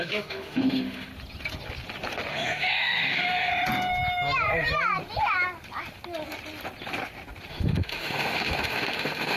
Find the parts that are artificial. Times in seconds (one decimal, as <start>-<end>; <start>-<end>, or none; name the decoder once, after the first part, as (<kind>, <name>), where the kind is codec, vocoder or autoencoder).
0.0-1.1 (autoencoder, DAC-VAE); 2.3-3.5; 7.5-9.4